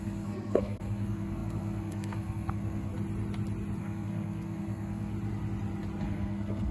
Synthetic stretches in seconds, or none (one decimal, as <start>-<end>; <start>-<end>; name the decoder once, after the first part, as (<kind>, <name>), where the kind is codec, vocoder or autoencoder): 0.0-2.9 (codec, SNAC); 3.8-5.1; 6.0-6.7